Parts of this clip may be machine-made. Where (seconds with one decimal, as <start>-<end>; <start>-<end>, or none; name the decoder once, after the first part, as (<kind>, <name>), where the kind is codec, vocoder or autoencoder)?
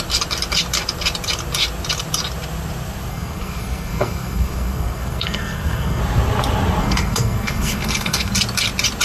3.1-6.0 (codec, SNAC); 6.8-8.3